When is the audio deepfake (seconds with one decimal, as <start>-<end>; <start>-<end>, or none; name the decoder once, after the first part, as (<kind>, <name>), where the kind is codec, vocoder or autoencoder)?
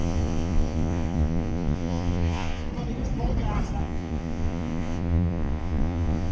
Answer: 0.0-2.7 (vocoder, Vocos); 3.8-6.3